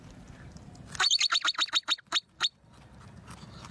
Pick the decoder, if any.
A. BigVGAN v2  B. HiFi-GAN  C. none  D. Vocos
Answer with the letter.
C